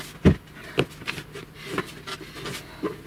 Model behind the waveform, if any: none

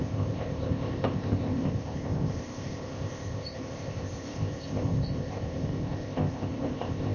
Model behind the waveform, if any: codec, ZipCodec